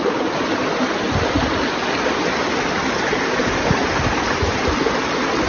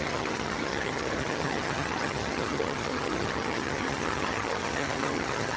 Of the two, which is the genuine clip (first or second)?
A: first